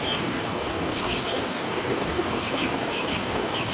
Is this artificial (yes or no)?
yes